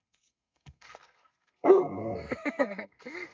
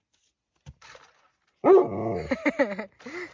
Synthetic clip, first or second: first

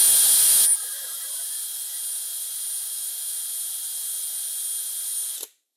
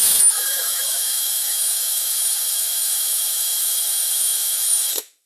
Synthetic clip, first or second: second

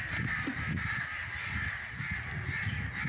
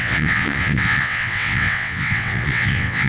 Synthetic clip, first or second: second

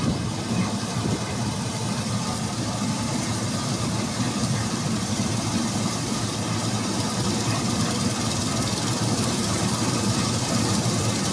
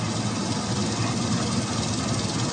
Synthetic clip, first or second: first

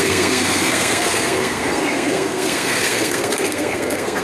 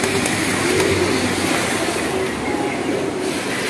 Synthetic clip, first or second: first